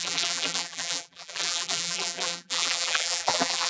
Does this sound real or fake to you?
fake